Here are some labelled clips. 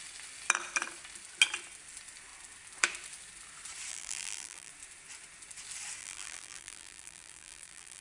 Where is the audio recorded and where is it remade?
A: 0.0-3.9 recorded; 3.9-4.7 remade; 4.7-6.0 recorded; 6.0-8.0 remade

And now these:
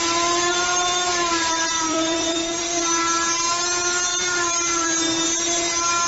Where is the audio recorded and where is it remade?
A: 0.0-0.9 recorded; 0.9-2.8 remade; 2.8-4.1 recorded; 4.1-4.9 remade; 4.9-6.1 recorded

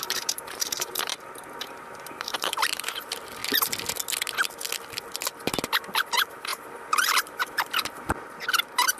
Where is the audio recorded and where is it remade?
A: 0.0-1.1 remade; 1.1-1.6 recorded; 1.6-3.4 remade; 3.4-5.8 recorded; 5.8-9.0 remade

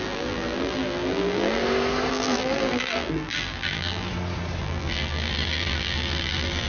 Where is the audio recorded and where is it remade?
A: 0.0-1.6 remade; 1.6-2.1 recorded; 2.1-4.1 remade; 4.1-4.6 recorded; 4.6-6.7 remade

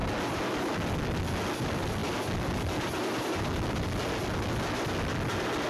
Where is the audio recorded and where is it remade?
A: 0.0-5.7 recorded

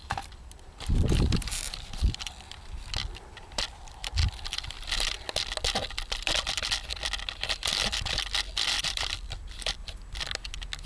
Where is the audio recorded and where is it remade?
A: 0.0-4.2 remade; 4.2-6.5 recorded; 6.5-6.9 remade; 6.9-8.7 recorded; 8.7-9.8 remade; 9.8-10.9 recorded

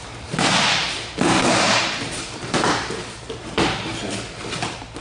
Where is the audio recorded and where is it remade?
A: 0.0-3.9 remade; 3.9-4.4 recorded; 4.4-5.0 remade

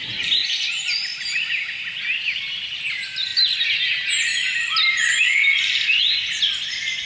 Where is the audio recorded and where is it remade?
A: 0.0-7.1 recorded